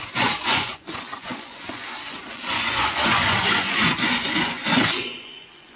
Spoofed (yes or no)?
yes